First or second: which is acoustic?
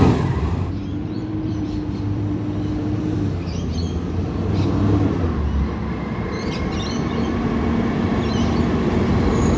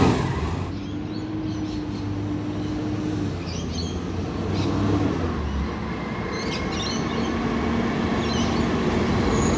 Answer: second